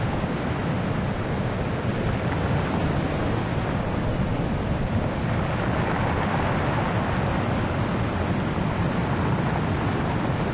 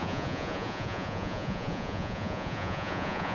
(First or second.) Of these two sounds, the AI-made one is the second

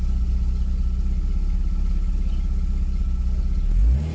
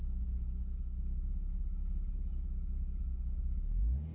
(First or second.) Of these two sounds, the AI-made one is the second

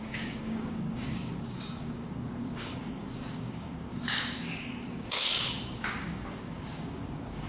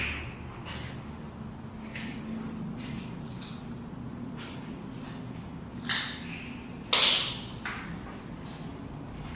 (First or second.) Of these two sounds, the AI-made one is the first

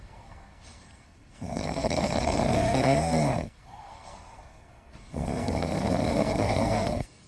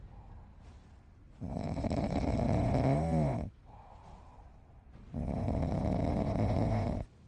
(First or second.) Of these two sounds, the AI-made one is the first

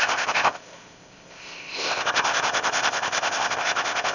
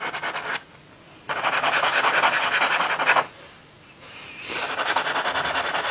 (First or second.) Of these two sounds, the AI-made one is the first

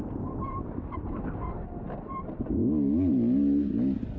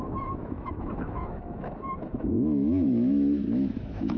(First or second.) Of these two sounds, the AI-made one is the second